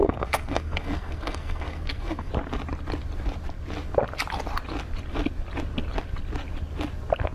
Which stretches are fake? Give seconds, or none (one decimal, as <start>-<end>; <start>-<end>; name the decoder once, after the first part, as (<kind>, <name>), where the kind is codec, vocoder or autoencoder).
0.0-2.3 (codec, SNAC)